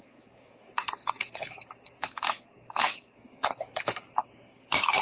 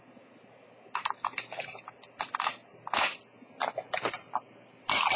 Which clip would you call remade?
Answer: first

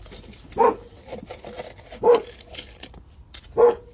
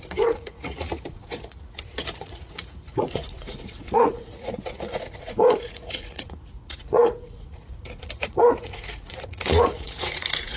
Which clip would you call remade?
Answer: second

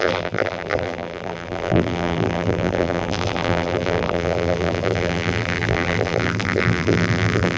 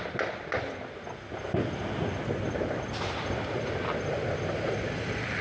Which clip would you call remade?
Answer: first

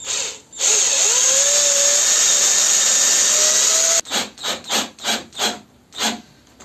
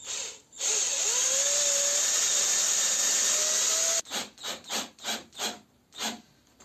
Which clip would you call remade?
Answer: second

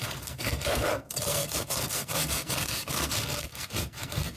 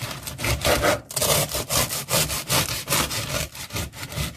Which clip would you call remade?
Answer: first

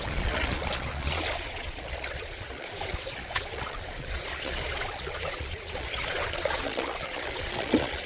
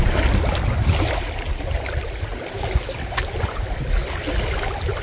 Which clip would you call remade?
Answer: first